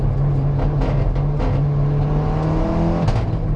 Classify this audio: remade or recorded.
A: recorded